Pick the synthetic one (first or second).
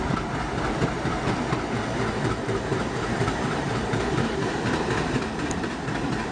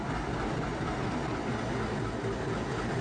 first